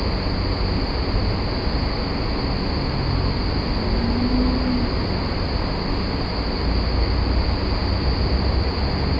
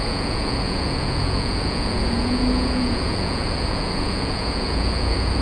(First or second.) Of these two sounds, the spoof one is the second